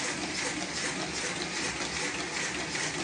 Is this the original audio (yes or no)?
yes